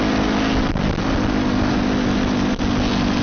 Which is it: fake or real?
real